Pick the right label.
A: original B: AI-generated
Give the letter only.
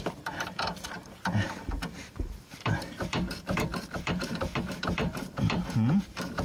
B